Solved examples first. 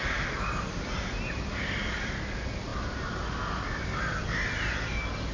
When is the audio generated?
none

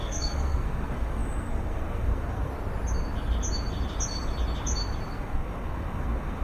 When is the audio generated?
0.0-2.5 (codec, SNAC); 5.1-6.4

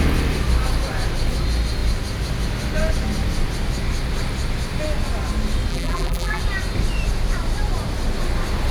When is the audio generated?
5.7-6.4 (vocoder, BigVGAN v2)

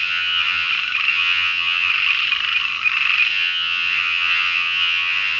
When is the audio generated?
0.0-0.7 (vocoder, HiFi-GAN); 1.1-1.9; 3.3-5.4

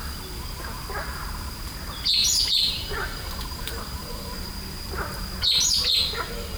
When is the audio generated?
2.2-4.5 (vocoder, BigVGAN v2)

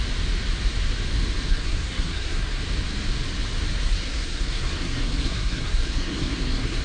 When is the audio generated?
1.5-2.6 (codec, SNAC); 3.7-6.8

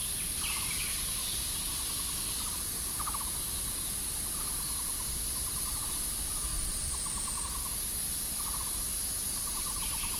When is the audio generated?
0.0-0.7 (vocoder, BigVGAN v2)